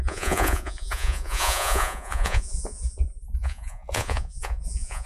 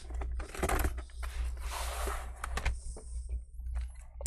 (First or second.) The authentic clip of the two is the second